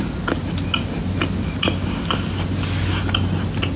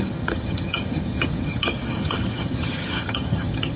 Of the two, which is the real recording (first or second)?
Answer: first